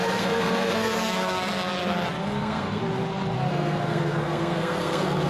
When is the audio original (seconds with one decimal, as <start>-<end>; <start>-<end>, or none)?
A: 1.5-2.2; 2.8-3.5

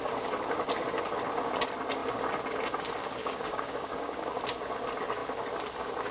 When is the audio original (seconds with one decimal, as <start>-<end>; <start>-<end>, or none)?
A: 0.0-3.2; 4.4-6.1

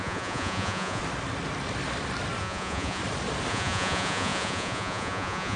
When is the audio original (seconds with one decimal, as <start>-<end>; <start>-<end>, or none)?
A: 1.0-2.4; 3.0-3.5

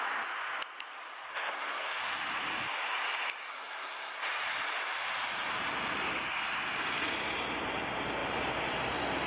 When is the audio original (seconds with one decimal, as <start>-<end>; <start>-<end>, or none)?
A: 0.0-1.3; 2.0-3.5; 4.2-9.3

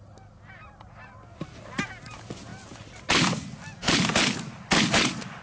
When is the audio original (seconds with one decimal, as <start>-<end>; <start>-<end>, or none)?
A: 0.0-5.4

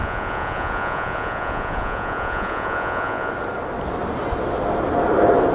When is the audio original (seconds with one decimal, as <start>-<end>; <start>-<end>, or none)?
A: 3.3-5.5

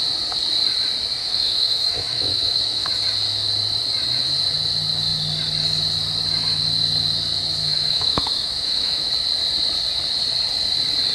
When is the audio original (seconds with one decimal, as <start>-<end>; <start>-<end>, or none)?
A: 0.0-1.2; 2.9-7.6; 9.1-11.1

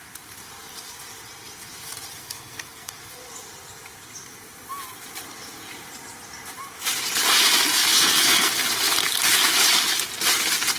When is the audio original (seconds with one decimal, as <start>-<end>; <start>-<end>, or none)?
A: 0.0-2.2; 2.9-7.8; 8.5-10.8